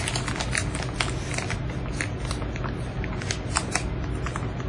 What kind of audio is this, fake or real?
real